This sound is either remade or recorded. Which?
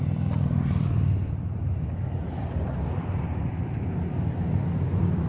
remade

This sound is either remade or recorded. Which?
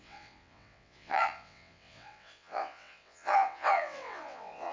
remade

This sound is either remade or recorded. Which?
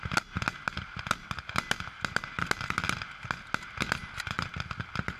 recorded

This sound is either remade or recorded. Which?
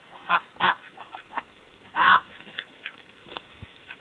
remade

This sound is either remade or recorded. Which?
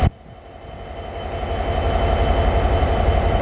recorded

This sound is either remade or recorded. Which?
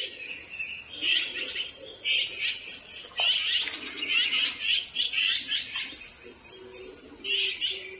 recorded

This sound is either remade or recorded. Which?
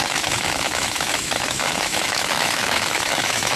remade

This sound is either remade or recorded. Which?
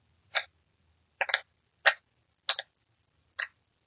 recorded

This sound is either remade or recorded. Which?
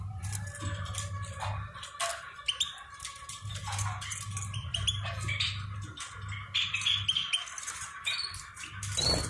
recorded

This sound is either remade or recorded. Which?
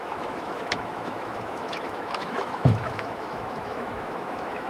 remade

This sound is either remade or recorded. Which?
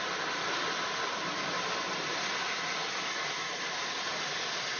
recorded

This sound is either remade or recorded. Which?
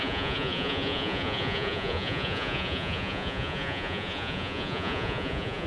remade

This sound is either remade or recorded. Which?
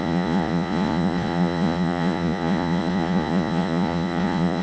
remade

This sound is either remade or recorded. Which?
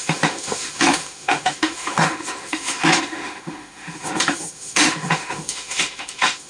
remade